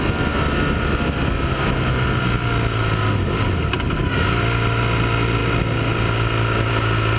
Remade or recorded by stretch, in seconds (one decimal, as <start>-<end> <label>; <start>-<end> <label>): 0.0-7.2 recorded